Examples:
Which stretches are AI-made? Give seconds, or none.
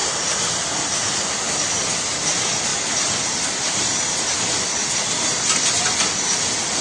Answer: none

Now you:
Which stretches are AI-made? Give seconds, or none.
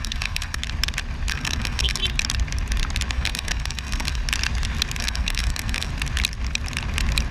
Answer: 0.0-0.6 (codec, SNAC); 1.3-2.0; 3.1-4.2; 5.0-5.9